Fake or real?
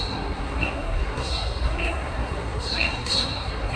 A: fake